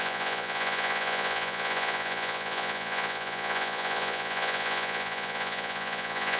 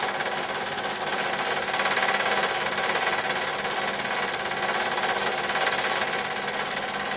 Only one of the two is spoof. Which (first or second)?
first